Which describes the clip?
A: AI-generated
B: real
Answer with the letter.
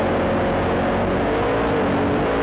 B